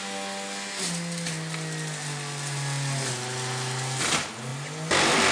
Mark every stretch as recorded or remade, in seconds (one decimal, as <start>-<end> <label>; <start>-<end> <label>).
0.0-5.3 recorded